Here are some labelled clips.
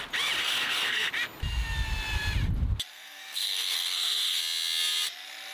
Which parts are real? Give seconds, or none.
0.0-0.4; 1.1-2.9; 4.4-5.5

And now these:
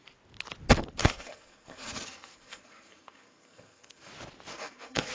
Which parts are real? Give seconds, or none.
0.0-1.0; 4.1-4.5

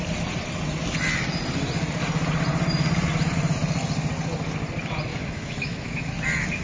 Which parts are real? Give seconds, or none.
0.0-5.1; 6.1-6.6